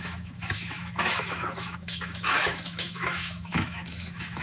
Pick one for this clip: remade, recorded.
remade